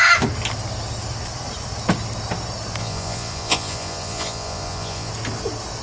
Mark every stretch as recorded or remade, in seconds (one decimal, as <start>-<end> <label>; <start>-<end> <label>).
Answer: 0.0-2.8 recorded; 2.8-5.1 remade; 5.1-5.8 recorded